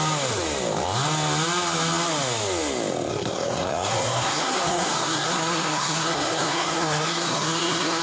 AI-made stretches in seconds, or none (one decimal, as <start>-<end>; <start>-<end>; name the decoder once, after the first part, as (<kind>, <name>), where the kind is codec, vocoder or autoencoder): 3.1-8.0 (codec, SNAC)